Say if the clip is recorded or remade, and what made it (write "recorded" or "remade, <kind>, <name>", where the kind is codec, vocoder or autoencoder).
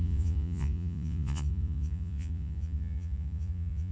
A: remade, vocoder, Vocos